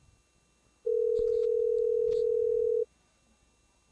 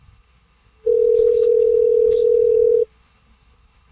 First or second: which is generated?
second